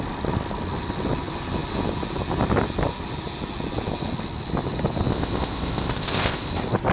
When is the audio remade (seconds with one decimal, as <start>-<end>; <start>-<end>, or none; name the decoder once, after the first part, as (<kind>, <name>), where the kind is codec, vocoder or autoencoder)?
5.1-6.5 (codec, ZipCodec)